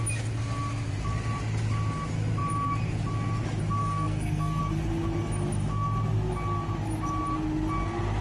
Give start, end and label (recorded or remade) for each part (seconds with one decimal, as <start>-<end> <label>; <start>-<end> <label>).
0.0-3.8 recorded; 3.8-4.6 remade; 4.6-8.2 recorded